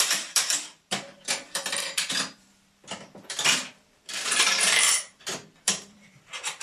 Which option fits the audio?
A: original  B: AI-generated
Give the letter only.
B